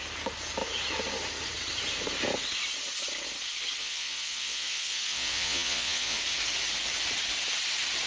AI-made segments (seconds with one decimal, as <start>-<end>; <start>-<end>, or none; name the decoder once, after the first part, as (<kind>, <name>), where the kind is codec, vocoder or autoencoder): 3.8-6.2 (vocoder, Vocos)